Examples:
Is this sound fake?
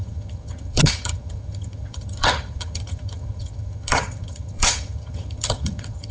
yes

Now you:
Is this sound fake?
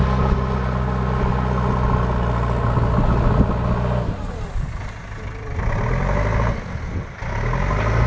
no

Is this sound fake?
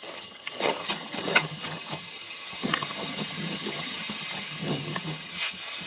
yes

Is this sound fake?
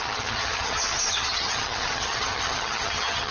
yes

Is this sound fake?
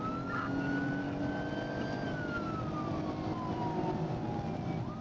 no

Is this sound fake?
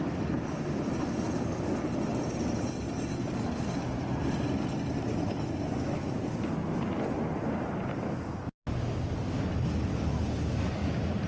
no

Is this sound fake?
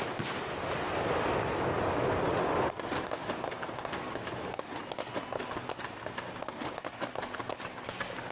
no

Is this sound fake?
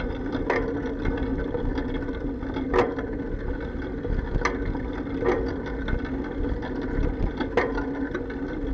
no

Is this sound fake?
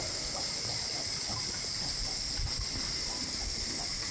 no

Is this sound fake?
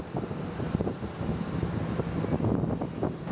no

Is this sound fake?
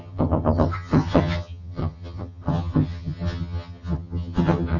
yes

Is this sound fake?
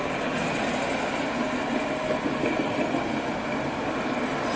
no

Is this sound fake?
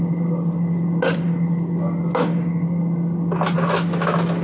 no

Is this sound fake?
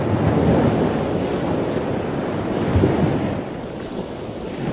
no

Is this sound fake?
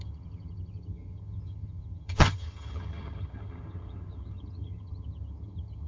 yes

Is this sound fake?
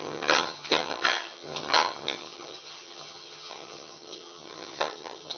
yes